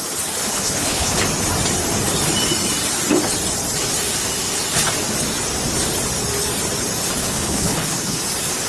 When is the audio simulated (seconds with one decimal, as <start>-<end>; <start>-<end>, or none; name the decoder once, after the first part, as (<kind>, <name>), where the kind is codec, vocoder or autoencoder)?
0.4-1.2 (codec, HILCodec); 7.2-8.2